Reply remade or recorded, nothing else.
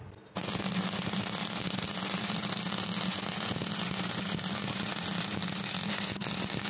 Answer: recorded